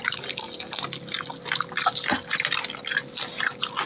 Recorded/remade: recorded